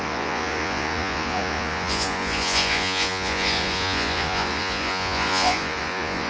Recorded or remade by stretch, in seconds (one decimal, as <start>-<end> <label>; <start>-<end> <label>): 0.0-6.3 remade